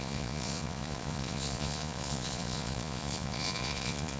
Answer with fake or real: fake